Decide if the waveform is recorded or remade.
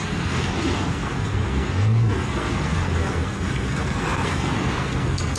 remade